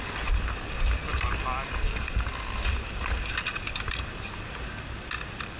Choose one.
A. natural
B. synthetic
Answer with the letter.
A